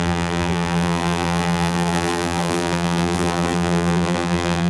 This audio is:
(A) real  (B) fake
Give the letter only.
B